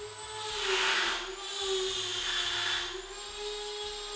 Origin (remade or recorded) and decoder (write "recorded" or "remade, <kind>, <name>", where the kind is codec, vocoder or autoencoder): recorded